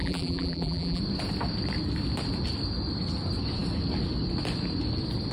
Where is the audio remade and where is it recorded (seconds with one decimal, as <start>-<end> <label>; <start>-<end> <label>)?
0.0-1.0 remade; 1.0-5.3 recorded